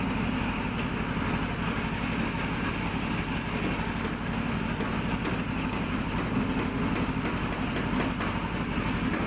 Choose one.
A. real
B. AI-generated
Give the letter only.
A